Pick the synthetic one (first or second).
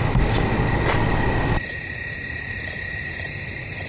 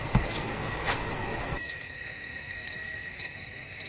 second